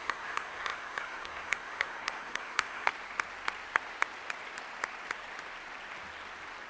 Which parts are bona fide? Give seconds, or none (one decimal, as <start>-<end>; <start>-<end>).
2.9-6.7